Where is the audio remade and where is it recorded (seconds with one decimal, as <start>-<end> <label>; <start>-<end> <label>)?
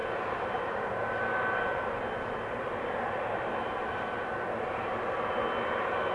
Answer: 0.0-6.1 recorded